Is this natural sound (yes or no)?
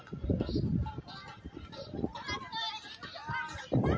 yes